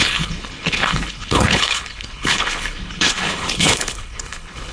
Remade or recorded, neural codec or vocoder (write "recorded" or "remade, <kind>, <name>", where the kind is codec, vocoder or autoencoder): remade, codec, HILCodec